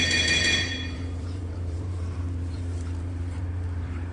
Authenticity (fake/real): fake